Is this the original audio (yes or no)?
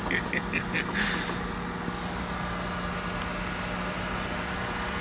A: yes